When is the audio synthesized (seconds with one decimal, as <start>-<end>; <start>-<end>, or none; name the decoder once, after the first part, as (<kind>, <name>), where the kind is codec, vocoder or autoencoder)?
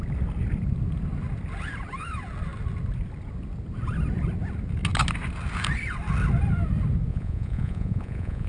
7.1-8.5 (vocoder, Vocos)